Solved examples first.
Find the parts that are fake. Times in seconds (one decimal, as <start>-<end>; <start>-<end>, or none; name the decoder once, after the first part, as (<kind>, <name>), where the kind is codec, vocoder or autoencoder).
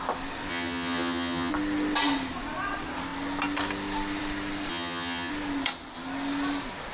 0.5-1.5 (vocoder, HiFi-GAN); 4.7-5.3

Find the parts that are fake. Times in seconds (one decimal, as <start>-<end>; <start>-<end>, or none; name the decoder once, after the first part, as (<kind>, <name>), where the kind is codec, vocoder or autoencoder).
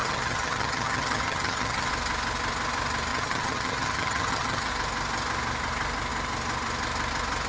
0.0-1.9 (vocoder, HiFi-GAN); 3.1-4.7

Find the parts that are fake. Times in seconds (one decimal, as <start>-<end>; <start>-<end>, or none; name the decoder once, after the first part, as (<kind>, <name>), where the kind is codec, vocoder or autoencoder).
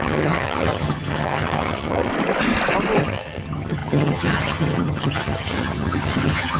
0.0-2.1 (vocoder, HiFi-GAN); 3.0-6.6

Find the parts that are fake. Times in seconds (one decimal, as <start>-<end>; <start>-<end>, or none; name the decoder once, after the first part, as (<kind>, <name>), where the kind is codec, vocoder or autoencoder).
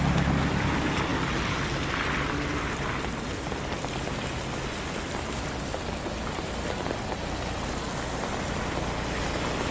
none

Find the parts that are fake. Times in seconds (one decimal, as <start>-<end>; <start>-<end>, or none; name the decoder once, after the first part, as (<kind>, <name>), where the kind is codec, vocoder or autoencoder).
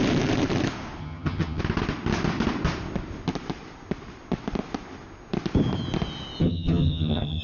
1.0-1.6 (vocoder, HiFi-GAN); 6.4-7.4